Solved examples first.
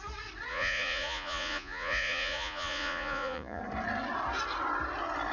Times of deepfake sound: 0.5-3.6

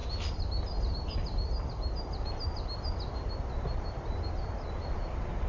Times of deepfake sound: none

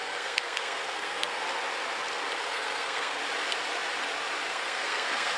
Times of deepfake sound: 0.0-1.4; 2.4-3.2; 4.5-5.4

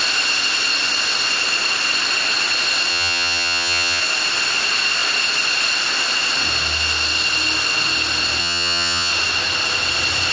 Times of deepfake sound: 2.9-4.0; 8.4-9.1

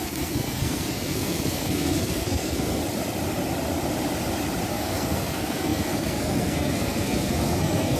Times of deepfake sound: 0.0-2.8; 4.7-8.0

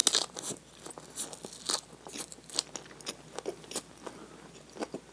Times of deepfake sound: none